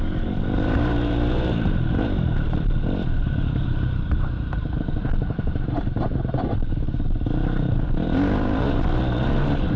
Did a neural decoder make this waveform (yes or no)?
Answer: yes